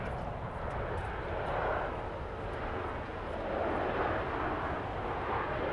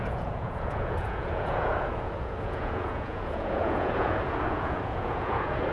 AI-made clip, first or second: second